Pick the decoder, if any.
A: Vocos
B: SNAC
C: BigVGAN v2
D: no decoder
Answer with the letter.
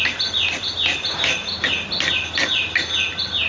D